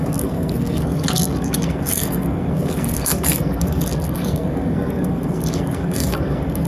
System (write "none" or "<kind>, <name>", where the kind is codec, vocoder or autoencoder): codec, SNAC